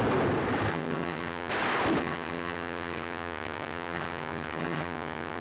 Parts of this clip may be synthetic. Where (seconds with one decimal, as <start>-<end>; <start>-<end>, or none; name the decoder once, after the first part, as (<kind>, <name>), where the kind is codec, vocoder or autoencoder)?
0.7-1.5 (vocoder, HiFi-GAN); 2.0-5.4